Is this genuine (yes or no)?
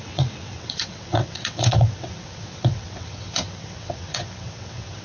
no